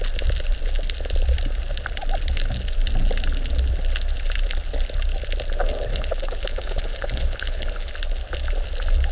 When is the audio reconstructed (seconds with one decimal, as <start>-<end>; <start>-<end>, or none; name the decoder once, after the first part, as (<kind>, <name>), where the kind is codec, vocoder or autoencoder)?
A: 5.9-7.9 (codec, HILCodec)